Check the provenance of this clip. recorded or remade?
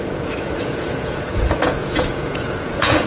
remade